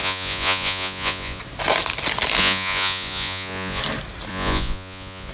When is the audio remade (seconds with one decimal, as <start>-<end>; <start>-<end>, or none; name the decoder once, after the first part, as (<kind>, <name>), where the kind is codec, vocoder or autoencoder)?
0.0-1.4 (vocoder, Vocos); 2.4-3.8; 4.3-5.3